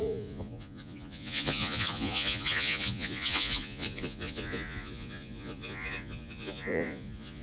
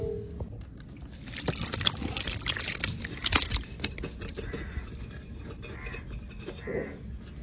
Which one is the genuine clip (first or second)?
second